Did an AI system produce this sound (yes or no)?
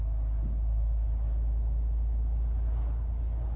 no